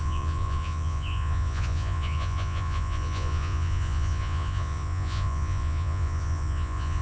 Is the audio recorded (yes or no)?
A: no